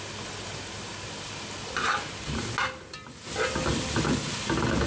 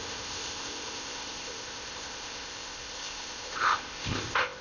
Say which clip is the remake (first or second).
second